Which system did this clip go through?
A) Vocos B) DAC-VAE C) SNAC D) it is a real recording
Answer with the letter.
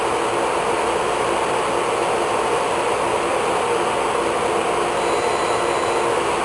D